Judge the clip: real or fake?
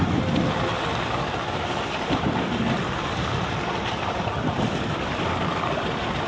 fake